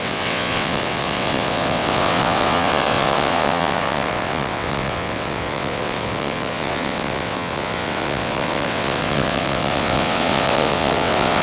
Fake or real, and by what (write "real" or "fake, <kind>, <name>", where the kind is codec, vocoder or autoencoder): fake, vocoder, WaveNeXt